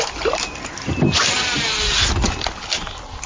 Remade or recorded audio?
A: recorded